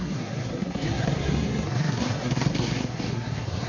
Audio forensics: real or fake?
fake